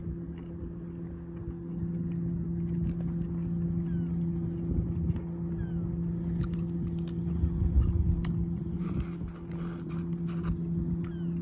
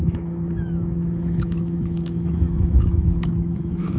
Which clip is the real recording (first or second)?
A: first